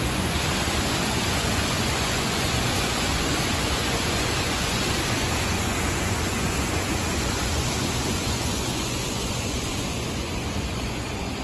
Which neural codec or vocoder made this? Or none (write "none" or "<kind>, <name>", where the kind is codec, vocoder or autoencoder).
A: vocoder, Vocos